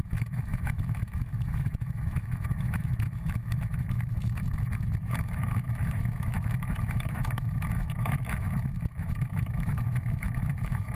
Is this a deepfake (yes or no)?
yes